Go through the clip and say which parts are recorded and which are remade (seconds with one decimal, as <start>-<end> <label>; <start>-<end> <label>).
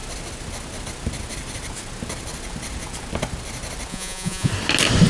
0.0-3.9 recorded; 3.9-4.5 remade; 4.5-5.1 recorded